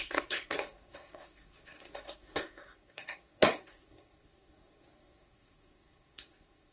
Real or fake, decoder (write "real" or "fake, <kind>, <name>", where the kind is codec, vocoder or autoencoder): fake, codec, SNAC